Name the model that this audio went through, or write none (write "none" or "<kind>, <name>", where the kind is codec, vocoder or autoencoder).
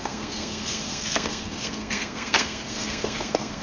codec, SNAC